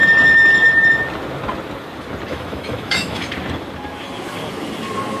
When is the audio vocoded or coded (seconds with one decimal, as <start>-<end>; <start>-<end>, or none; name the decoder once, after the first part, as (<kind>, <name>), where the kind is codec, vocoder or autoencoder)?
2.3-3.3 (autoencoder, DAC-VAE)